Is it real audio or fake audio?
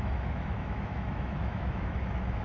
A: fake